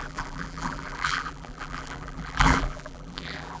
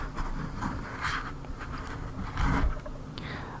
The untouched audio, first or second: second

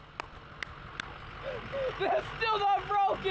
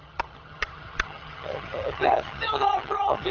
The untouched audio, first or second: first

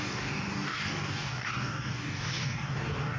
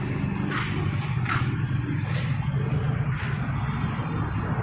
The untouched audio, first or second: second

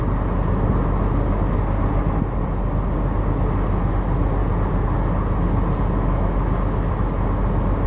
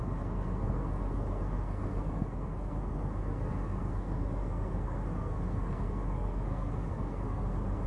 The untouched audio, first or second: first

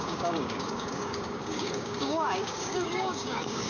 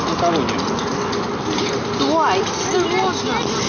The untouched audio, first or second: second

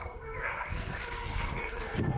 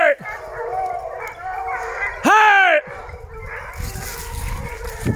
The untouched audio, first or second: second